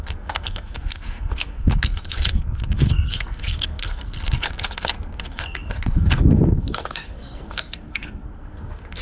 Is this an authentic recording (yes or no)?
no